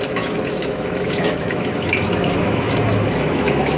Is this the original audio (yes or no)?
no